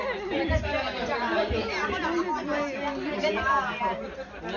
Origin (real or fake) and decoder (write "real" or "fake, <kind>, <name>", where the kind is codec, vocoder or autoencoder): real